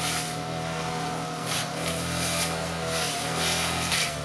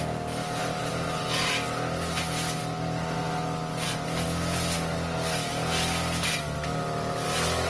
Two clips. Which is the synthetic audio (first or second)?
first